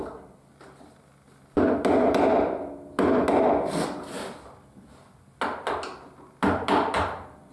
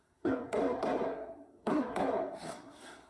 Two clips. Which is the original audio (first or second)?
first